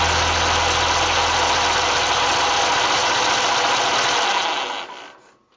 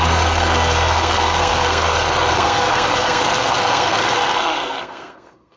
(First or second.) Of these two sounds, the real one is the first